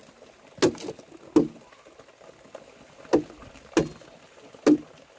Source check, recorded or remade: recorded